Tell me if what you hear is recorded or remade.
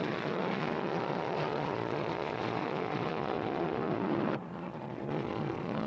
remade